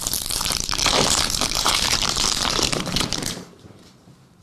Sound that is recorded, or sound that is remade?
remade